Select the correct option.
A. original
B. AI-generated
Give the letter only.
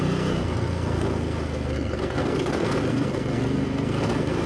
B